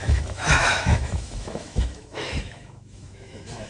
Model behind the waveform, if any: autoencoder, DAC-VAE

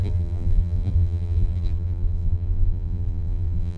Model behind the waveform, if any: vocoder, BigVGAN v2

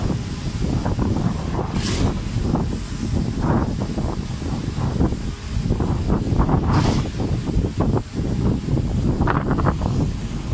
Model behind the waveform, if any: none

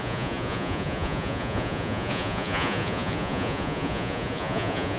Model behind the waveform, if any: vocoder, Vocos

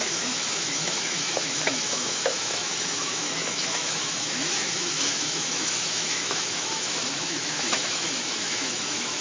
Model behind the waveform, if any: autoencoder, DAC-VAE